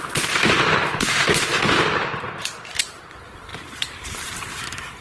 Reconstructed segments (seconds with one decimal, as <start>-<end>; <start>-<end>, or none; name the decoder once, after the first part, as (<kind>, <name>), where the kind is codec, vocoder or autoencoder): 0.0-1.5 (vocoder, BigVGAN v2); 2.2-5.0